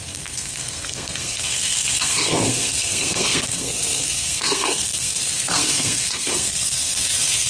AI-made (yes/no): yes